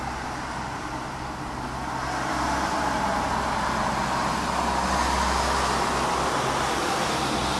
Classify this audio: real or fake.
real